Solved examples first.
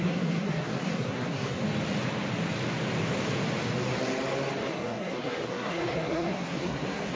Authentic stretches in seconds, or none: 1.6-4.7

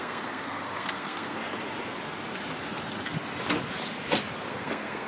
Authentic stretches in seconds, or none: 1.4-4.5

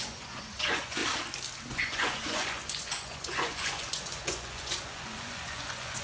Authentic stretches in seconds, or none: 1.0-1.7

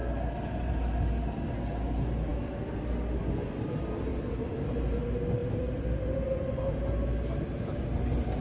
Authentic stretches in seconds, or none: 0.0-2.3; 3.2-4.1; 4.7-5.4; 6.4-8.4